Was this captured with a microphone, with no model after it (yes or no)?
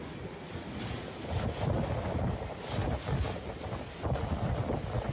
yes